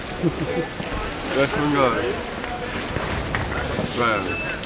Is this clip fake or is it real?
real